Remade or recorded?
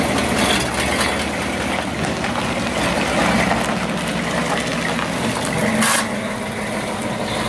recorded